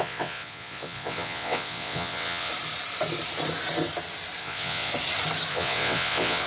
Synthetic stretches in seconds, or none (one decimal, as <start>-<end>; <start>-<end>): 0.0-2.5; 4.4-4.9; 5.5-6.5